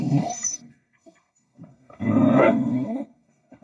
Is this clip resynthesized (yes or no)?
yes